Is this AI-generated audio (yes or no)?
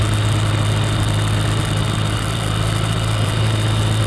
no